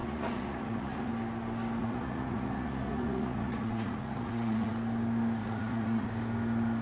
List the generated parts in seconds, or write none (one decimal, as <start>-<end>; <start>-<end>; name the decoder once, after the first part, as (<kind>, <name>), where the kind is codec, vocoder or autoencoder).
0.0-1.1 (vocoder, Vocos); 1.8-4.7; 5.4-6.1